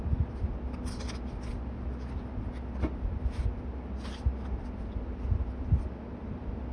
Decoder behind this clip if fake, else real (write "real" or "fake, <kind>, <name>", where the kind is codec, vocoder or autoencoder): real